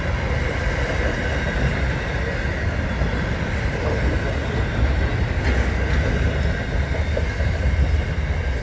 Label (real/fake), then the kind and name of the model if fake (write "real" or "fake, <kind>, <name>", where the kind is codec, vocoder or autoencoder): real